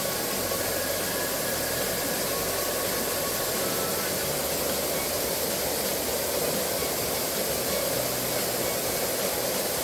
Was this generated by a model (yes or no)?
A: no